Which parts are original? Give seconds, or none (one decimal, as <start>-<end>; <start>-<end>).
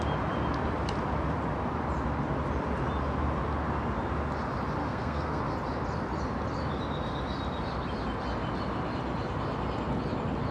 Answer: 0.0-4.8; 5.4-10.5